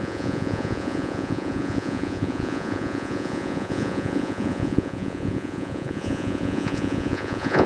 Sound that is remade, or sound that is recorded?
remade